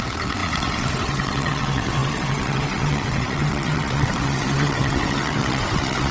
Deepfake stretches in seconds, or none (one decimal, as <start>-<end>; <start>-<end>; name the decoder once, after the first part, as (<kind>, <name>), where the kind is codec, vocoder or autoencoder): 0.0-6.1 (vocoder, WaveNeXt)